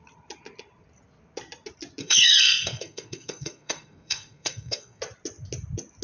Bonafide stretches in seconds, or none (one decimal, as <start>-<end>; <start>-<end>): 0.0-2.0; 5.0-6.0